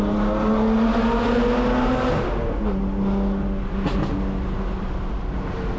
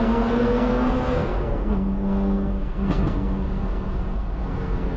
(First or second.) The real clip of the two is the first